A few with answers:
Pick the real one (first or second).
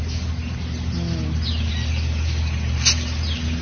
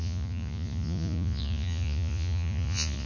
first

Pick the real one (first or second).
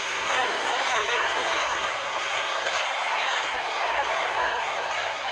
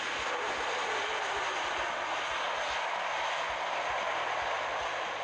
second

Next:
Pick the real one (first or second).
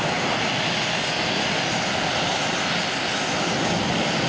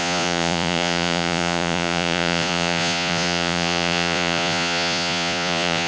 first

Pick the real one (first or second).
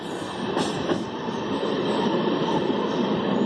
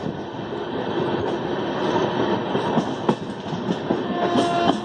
second